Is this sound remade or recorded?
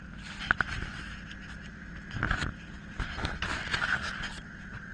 recorded